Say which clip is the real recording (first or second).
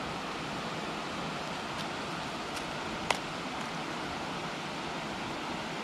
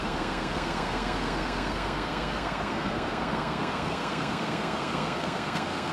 first